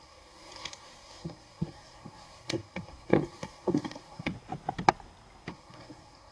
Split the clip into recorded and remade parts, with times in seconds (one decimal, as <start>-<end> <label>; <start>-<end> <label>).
0.0-4.3 remade; 4.3-5.5 recorded; 5.5-6.3 remade